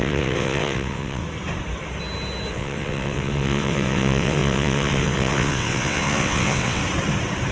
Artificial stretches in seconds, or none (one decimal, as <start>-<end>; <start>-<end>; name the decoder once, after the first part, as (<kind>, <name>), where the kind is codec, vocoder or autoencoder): 0.0-1.2 (vocoder, WaveNeXt); 2.5-6.8